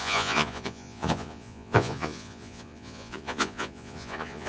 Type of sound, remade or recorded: remade